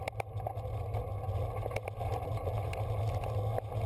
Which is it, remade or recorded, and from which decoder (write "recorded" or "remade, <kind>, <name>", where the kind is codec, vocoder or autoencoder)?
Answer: recorded